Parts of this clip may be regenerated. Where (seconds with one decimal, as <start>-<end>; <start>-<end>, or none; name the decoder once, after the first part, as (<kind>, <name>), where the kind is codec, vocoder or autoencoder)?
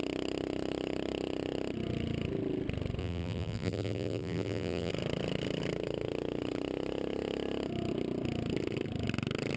3.0-4.9 (vocoder, BigVGAN v2)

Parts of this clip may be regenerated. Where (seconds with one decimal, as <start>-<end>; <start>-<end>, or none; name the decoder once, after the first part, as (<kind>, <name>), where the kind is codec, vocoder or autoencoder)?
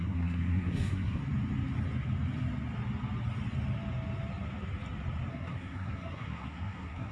0.0-1.2 (codec, SNAC); 5.3-7.1